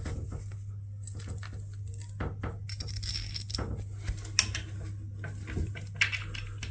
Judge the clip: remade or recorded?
recorded